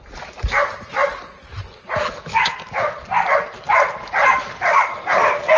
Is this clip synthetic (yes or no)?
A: no